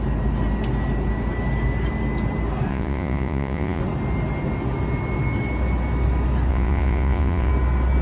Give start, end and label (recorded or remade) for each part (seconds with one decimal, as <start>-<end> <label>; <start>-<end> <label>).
0.0-2.7 recorded; 2.7-3.8 remade; 3.8-6.5 recorded; 6.5-7.5 remade; 7.5-8.0 recorded